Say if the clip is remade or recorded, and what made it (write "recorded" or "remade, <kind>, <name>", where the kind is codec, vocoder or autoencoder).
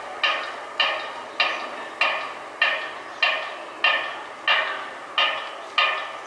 recorded